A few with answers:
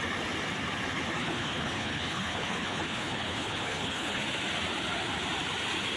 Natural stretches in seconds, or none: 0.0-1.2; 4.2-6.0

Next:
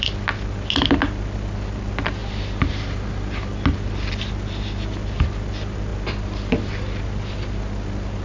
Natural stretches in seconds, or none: 0.0-8.2

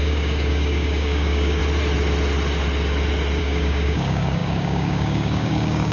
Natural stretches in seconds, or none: 1.6-3.4

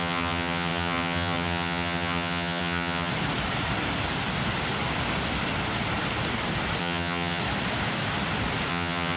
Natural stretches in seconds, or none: 3.1-6.8; 7.4-8.7

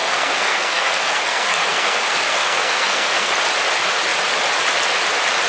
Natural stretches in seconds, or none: 3.3-5.5

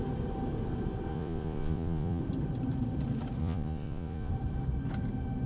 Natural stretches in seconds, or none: 0.0-1.1; 2.2-3.4; 4.3-5.5

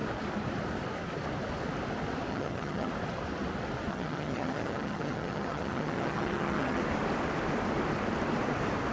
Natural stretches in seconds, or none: 0.0-2.3; 2.9-3.9; 6.8-8.9